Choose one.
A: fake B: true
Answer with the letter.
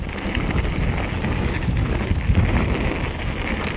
B